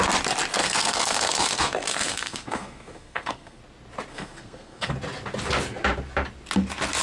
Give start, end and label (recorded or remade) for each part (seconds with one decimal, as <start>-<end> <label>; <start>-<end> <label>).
0.0-0.6 recorded; 0.6-3.6 remade; 3.6-4.1 recorded; 4.1-4.9 remade; 4.9-7.0 recorded

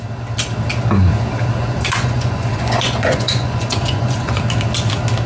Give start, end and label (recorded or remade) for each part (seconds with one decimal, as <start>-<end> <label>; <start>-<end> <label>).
0.0-1.6 recorded; 1.6-4.4 remade; 4.4-5.3 recorded

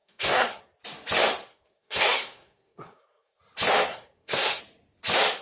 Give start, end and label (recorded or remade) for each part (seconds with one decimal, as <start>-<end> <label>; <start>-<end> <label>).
0.0-0.6 remade; 0.6-1.5 recorded; 1.5-3.4 remade; 3.4-3.9 recorded; 3.9-4.6 remade; 4.6-5.4 recorded

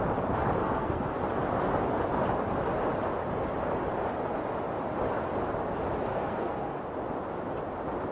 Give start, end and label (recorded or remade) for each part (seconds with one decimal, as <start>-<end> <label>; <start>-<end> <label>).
0.0-0.6 recorded; 0.6-1.2 remade; 1.2-6.1 recorded; 6.1-6.8 remade; 6.8-8.1 recorded